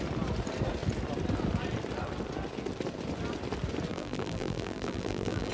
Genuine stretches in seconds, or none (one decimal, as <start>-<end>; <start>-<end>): 0.0-3.9

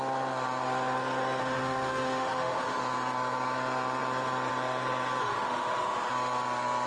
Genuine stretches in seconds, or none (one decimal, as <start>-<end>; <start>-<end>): 0.0-1.4; 2.8-5.2; 6.1-6.9

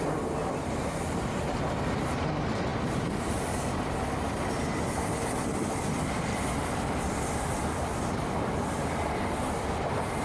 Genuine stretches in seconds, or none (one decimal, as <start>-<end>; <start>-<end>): 0.0-10.2